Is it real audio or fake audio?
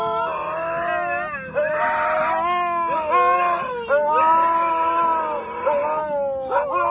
real